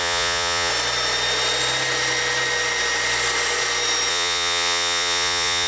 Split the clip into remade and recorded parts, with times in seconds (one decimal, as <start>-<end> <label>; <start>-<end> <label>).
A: 0.0-0.7 remade; 0.7-4.1 recorded; 4.1-5.7 remade